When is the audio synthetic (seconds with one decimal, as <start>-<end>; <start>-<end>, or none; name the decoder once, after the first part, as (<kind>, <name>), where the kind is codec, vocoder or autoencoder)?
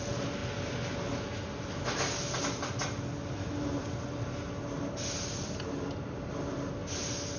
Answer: none